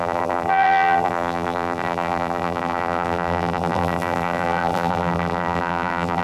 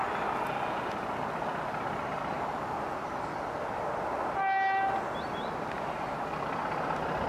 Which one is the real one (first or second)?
second